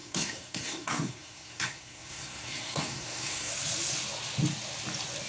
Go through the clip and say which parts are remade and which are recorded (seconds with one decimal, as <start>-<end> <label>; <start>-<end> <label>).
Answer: 0.0-3.5 remade; 3.5-5.3 recorded

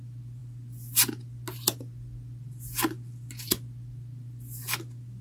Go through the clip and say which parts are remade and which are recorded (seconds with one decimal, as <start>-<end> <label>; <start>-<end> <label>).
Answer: 0.0-5.2 recorded

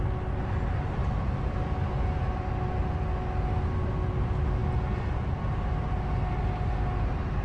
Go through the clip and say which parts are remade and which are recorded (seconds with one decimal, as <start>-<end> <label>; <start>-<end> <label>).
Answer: 0.0-7.4 recorded

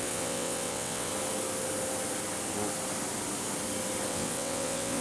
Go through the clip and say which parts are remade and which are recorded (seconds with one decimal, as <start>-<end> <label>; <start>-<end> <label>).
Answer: 0.0-1.1 remade; 1.1-4.1 recorded; 4.1-5.0 remade

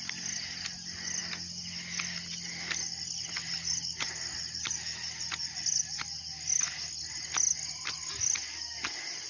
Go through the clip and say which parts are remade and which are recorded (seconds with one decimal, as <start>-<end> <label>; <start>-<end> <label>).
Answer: 0.0-9.3 recorded

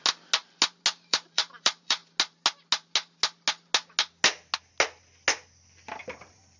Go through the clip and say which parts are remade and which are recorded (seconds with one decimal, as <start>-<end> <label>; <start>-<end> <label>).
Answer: 0.0-0.9 recorded; 0.9-2.0 remade; 2.0-6.0 recorded; 6.0-6.6 remade

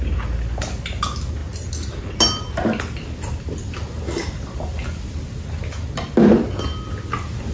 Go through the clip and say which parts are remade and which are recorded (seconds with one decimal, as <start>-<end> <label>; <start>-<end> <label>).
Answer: 0.0-7.5 recorded

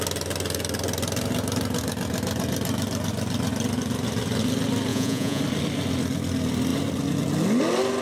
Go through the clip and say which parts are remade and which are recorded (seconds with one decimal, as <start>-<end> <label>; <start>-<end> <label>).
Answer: 0.0-4.9 recorded; 4.9-5.4 remade; 5.4-8.0 recorded